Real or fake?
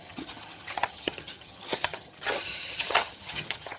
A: fake